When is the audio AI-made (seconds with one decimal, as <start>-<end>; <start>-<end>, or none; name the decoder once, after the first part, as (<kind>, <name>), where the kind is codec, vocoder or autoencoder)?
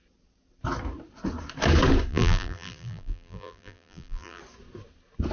2.1-4.4 (vocoder, BigVGAN v2)